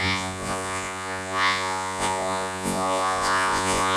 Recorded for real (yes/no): no